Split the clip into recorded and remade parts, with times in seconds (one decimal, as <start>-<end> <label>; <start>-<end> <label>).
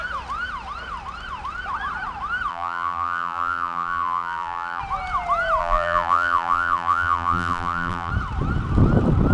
0.0-2.5 recorded; 2.5-4.8 remade; 4.8-5.6 recorded; 5.6-8.1 remade; 8.1-9.3 recorded